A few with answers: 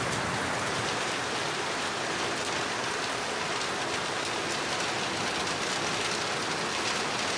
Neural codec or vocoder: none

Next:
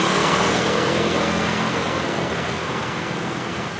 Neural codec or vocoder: codec, SNAC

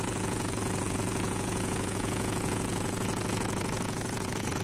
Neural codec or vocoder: vocoder, Vocos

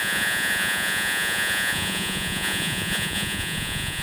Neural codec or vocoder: vocoder, Vocos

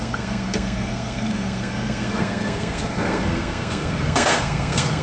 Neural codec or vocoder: codec, SNAC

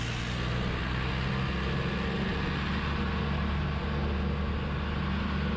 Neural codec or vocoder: none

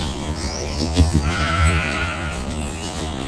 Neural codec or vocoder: vocoder, Vocos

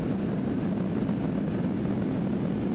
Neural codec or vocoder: none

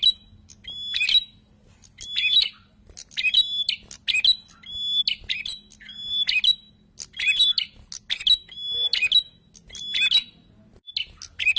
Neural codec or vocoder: none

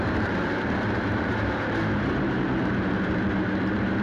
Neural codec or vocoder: vocoder, BigVGAN v2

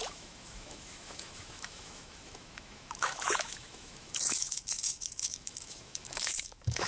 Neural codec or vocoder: autoencoder, DAC-VAE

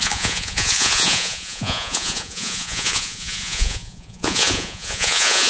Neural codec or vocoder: vocoder, Vocos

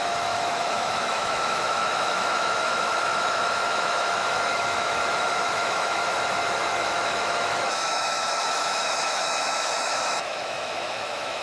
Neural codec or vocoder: autoencoder, DAC-VAE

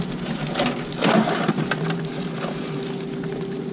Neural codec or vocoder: none